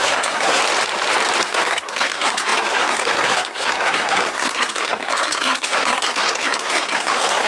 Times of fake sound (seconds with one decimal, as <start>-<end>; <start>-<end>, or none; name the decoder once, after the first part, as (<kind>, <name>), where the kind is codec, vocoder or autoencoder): 0.0-0.6 (codec, SNAC); 1.4-7.5